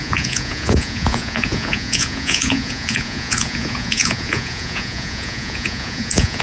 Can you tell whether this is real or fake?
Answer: fake